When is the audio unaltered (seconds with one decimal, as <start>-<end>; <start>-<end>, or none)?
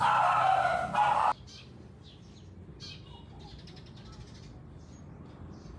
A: 0.0-5.8